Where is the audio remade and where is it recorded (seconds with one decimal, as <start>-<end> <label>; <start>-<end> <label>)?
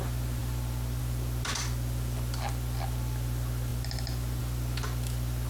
0.0-5.5 recorded